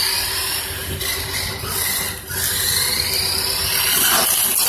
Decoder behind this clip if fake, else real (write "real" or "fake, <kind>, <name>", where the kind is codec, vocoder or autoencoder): real